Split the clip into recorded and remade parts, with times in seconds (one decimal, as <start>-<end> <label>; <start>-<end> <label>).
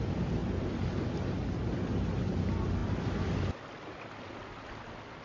0.0-5.2 recorded